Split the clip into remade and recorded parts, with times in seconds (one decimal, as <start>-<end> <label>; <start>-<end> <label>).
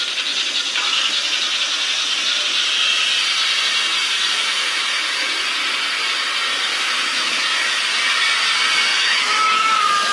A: 0.0-4.5 recorded; 4.5-5.3 remade; 5.3-6.7 recorded; 6.7-7.8 remade; 7.8-8.9 recorded; 8.9-9.5 remade; 9.5-10.1 recorded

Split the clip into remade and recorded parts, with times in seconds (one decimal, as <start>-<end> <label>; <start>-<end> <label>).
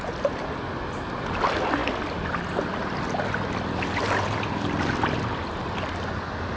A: 0.0-6.6 recorded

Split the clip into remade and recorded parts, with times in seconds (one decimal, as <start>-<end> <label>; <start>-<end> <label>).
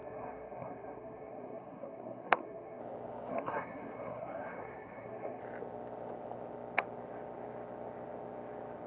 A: 0.0-2.8 remade; 2.8-3.3 recorded; 3.3-5.4 remade; 5.4-8.9 recorded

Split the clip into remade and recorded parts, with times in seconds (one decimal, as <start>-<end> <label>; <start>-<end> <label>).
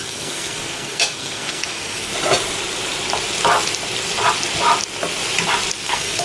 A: 0.0-2.1 remade; 2.1-5.8 recorded; 5.8-6.2 remade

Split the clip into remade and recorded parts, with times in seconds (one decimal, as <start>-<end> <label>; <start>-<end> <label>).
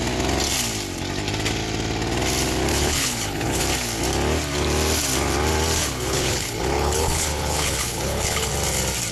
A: 0.0-2.7 recorded; 2.7-3.6 remade; 3.6-5.8 recorded; 5.8-8.5 remade; 8.5-9.1 recorded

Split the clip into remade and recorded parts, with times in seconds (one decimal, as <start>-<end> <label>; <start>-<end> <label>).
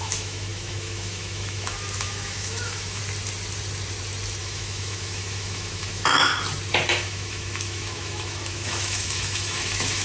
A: 0.0-3.0 remade; 3.0-4.4 recorded; 4.4-6.3 remade; 6.3-6.9 recorded; 6.9-10.0 remade